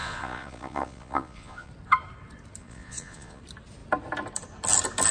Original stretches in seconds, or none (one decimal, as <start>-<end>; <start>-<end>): 1.7-2.6; 3.4-5.1